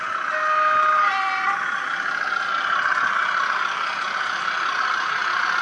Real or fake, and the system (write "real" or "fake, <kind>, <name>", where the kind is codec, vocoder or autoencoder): real